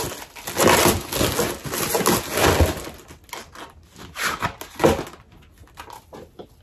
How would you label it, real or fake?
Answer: real